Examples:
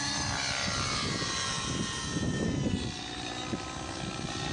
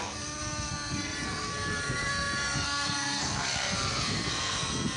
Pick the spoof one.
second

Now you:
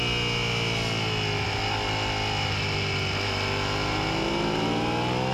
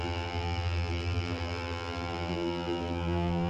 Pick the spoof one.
second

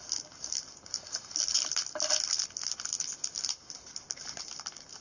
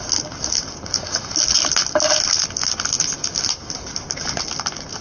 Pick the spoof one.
first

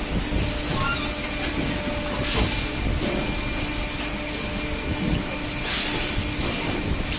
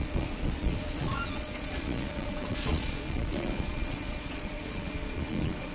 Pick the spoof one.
second